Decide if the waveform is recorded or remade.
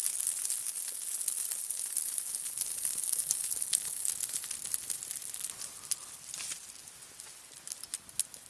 recorded